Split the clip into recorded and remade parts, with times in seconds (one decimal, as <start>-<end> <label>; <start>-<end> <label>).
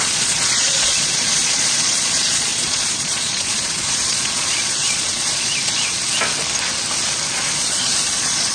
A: 0.0-6.0 remade; 6.0-7.3 recorded; 7.3-8.5 remade